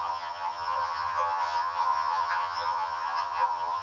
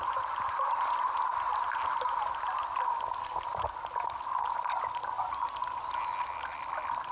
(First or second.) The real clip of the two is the second